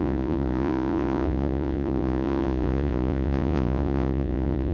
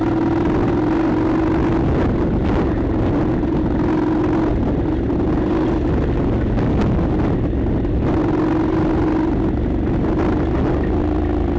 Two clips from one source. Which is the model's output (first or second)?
first